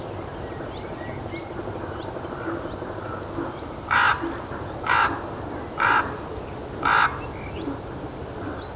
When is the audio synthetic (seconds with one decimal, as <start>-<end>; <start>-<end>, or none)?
none